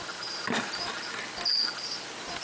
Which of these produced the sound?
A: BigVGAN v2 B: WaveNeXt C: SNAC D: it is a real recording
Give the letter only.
D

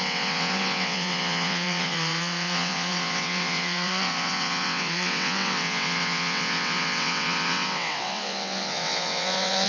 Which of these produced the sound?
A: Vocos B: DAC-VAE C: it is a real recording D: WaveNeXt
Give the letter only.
D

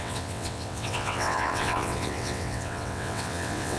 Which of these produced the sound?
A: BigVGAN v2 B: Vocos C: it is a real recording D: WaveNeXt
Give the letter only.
D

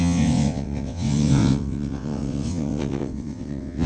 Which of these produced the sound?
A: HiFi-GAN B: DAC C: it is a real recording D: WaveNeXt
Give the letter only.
D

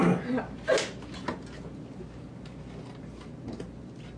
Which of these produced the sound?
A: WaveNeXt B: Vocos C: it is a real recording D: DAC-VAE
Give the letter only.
C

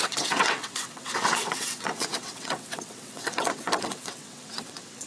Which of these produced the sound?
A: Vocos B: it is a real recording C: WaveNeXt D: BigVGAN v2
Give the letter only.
C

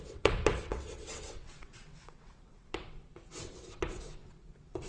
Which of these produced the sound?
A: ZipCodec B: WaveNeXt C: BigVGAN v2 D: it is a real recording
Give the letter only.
B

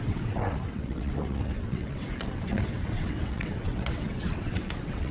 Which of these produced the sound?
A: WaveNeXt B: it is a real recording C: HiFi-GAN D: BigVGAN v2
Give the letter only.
A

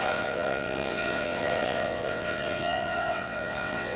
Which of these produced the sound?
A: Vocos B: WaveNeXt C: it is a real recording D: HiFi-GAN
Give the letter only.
B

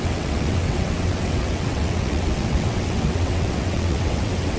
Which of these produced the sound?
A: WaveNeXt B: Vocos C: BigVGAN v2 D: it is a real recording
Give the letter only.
A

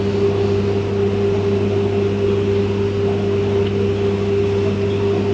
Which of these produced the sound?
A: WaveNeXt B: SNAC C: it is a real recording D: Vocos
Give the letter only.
C